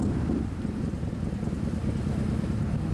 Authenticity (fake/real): real